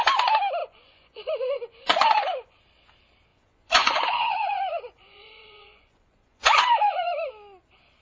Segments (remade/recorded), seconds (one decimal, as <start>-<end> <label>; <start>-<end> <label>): 0.0-0.6 recorded; 0.6-2.6 remade; 2.6-3.3 recorded; 3.3-7.3 remade; 7.3-8.0 recorded

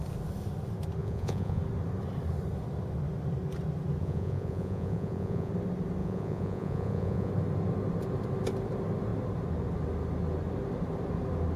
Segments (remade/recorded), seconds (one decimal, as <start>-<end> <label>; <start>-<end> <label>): 0.0-1.0 recorded; 1.0-1.6 remade; 1.6-4.0 recorded; 4.0-5.5 remade; 5.5-6.0 recorded; 6.0-7.3 remade; 7.3-11.6 recorded

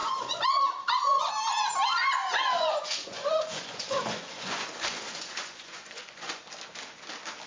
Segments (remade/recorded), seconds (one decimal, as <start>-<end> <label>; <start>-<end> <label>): 0.0-1.3 remade; 1.3-1.9 recorded; 1.9-6.4 remade; 6.4-7.5 recorded

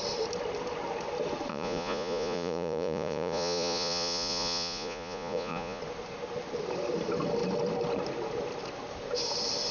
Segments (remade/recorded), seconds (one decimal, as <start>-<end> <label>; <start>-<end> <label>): 0.0-1.5 recorded; 1.5-5.8 remade; 5.8-9.7 recorded

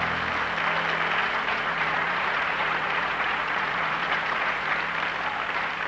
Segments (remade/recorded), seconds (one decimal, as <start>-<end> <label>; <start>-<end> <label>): 0.0-1.2 recorded; 1.2-4.7 remade; 4.7-5.9 recorded

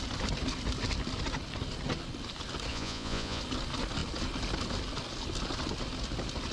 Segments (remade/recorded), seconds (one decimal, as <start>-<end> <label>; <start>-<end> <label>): 0.0-2.7 recorded; 2.7-3.4 remade; 3.4-6.5 recorded

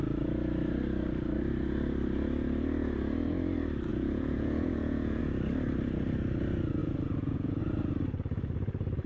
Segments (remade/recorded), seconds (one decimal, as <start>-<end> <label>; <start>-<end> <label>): 0.0-3.9 recorded; 3.9-5.2 remade; 5.2-6.8 recorded; 6.8-7.6 remade; 7.6-9.1 recorded